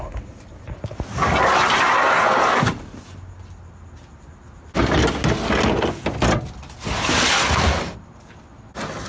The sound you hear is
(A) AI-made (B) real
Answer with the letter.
B